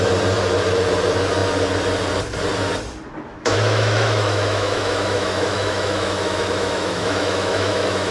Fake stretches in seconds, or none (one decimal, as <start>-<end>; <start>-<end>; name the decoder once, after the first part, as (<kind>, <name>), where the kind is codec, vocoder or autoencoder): 3.3-8.1 (autoencoder, DAC-VAE)